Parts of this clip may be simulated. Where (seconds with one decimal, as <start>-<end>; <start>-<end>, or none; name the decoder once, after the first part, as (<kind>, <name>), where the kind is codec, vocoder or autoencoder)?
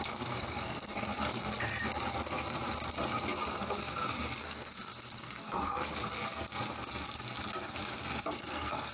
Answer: 0.0-1.7 (codec, SNAC); 4.4-5.8; 8.3-8.9